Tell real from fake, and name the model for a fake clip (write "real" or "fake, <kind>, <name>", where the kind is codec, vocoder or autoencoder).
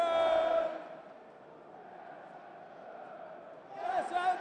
real